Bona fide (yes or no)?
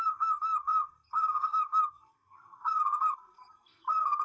no